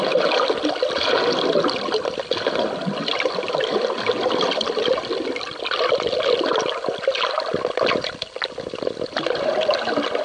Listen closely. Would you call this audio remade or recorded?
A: recorded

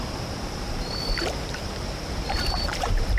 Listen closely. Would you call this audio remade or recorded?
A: remade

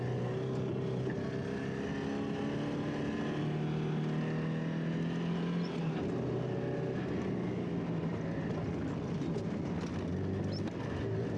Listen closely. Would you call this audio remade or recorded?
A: recorded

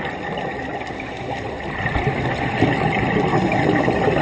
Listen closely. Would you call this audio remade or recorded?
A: recorded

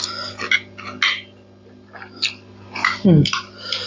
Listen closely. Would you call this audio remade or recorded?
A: recorded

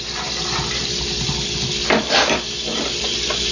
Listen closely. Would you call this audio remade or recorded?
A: remade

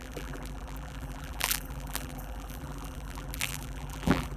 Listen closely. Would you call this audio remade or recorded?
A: remade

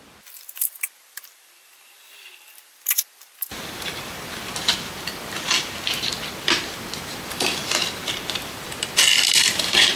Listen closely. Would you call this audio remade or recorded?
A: remade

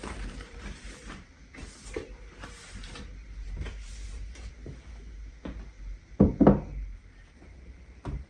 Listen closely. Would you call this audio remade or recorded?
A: remade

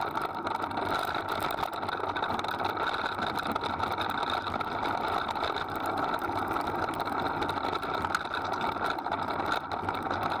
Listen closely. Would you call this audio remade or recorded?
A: recorded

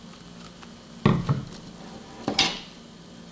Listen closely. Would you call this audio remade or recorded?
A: recorded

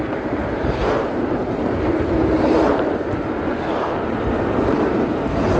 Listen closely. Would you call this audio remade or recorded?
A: remade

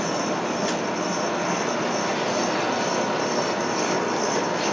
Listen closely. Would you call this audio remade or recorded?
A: recorded